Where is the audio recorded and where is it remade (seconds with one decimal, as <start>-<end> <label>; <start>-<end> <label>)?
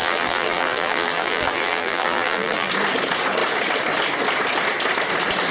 0.0-2.7 remade; 2.7-5.5 recorded